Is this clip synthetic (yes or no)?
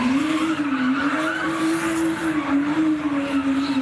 yes